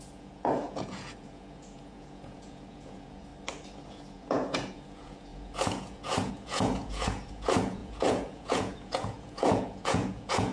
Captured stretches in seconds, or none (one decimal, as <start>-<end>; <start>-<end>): 3.3-3.9